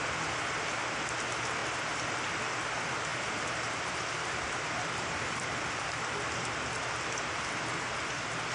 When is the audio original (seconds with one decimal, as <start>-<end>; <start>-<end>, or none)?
0.0-3.1; 6.0-8.5